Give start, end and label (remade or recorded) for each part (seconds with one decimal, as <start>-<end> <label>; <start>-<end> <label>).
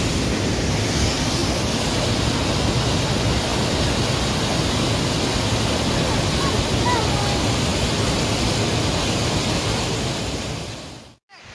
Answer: 0.0-11.5 recorded